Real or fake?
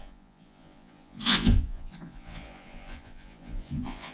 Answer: fake